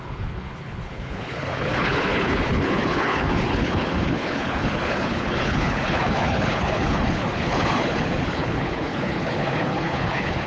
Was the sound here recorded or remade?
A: remade